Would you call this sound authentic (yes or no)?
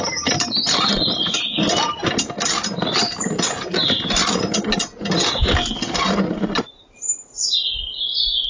yes